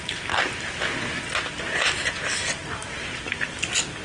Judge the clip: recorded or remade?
recorded